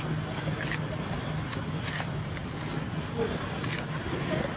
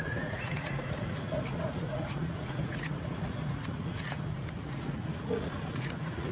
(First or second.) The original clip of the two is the first